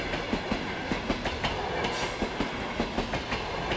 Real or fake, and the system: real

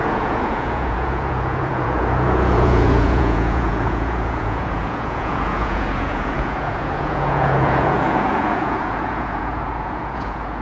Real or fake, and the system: fake, vocoder, Vocos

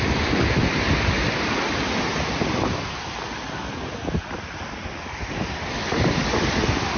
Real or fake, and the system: real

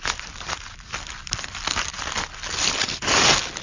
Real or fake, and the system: real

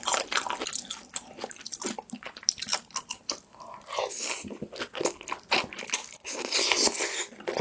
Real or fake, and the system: real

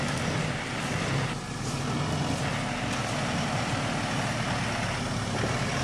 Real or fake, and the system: real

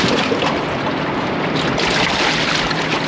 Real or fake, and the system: real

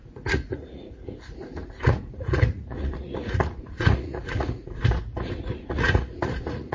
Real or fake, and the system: fake, vocoder, Vocos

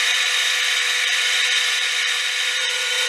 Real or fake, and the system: fake, vocoder, Vocos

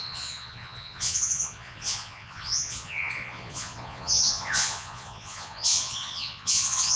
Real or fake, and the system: fake, vocoder, Vocos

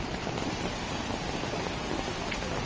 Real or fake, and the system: real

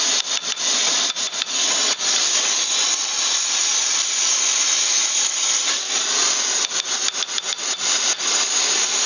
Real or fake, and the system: real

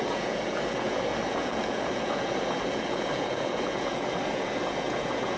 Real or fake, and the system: fake, vocoder, Vocos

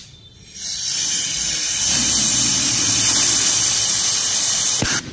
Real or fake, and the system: real